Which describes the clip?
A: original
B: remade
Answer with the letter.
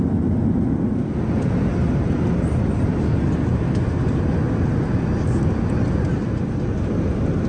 A